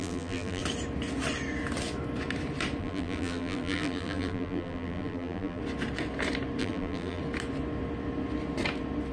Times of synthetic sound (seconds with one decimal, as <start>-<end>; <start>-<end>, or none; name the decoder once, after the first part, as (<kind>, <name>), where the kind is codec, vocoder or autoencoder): 0.0-0.6 (vocoder, BigVGAN v2); 2.8-5.6; 6.6-7.2